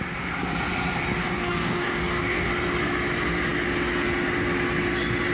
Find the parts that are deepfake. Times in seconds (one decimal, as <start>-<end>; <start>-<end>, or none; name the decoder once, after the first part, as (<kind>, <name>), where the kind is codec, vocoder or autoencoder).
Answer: 1.2-2.5 (codec, DAC)